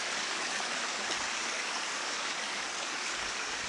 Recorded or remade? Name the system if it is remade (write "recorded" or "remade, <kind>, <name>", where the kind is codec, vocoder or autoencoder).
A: remade, codec, DAC